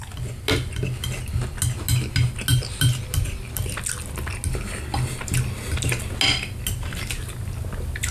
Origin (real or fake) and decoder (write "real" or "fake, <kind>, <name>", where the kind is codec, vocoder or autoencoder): real